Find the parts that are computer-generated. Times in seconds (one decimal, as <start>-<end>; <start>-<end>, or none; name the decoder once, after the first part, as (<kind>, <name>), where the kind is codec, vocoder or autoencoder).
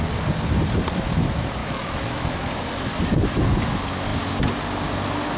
1.6-2.5 (autoencoder, DAC-VAE)